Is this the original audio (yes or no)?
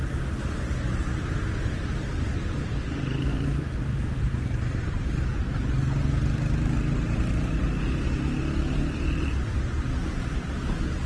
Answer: yes